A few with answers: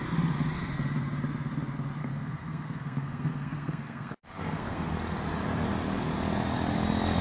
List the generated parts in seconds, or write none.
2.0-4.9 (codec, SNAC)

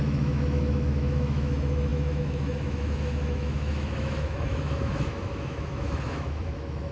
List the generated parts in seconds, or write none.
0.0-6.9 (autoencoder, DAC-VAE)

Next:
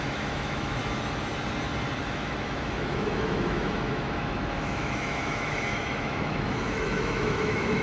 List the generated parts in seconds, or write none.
0.0-0.8 (autoencoder, DAC-VAE); 2.0-7.8

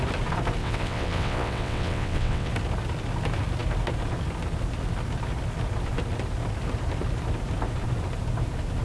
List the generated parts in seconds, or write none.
0.6-2.5 (vocoder, WaveNeXt)